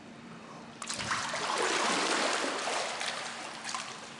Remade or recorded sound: remade